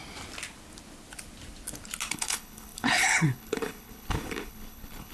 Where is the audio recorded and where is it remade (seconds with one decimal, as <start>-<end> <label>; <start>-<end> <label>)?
0.0-2.1 recorded; 2.1-5.1 remade